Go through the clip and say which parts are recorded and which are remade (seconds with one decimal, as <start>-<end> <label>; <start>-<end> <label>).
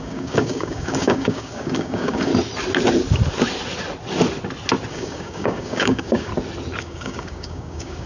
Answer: 0.0-2.3 remade; 2.3-4.9 recorded; 4.9-6.3 remade; 6.3-6.8 recorded; 6.8-8.1 remade